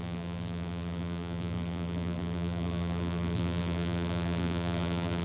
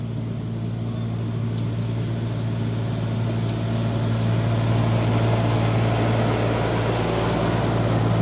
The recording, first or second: second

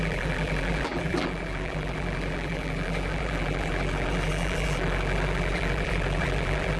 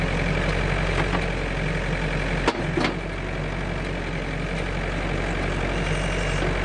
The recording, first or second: second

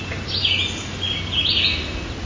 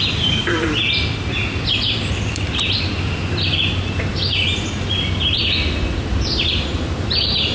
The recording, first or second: first